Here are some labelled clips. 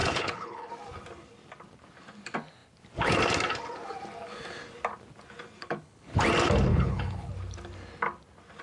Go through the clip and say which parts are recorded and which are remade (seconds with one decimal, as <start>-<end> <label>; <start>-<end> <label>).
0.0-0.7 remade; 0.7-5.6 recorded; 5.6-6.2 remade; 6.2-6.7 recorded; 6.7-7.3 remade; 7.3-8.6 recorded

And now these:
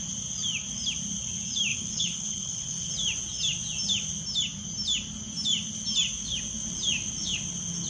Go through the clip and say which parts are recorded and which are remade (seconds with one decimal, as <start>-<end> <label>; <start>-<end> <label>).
0.0-1.7 recorded; 1.7-2.9 remade; 2.9-7.9 recorded

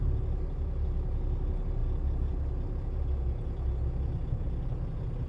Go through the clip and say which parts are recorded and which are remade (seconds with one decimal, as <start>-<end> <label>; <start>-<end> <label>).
0.0-5.3 recorded

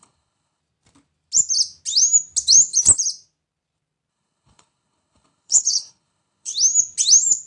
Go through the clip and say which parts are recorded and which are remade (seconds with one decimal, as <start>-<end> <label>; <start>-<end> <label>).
0.0-0.6 remade; 0.6-4.1 recorded; 4.1-6.5 remade; 6.5-7.5 recorded

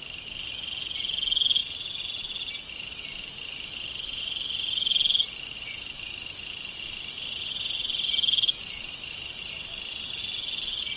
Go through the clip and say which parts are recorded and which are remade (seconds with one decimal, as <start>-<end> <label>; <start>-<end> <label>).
0.0-11.0 recorded

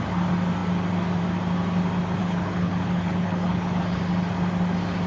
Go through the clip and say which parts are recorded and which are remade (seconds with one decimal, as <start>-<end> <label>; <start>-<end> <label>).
0.0-2.2 recorded; 2.2-4.0 remade; 4.0-5.1 recorded